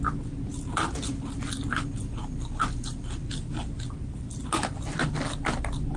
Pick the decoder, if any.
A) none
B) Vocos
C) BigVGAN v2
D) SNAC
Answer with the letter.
A